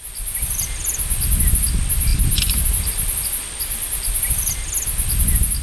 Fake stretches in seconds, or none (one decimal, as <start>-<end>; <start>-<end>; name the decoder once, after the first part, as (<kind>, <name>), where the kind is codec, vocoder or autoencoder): none